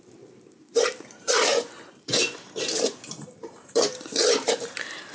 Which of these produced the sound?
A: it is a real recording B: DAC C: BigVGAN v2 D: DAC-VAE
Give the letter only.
C